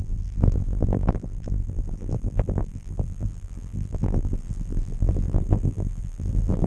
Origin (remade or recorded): remade